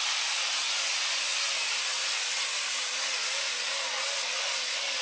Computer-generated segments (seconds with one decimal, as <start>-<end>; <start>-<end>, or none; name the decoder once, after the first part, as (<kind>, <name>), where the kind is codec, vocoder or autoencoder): none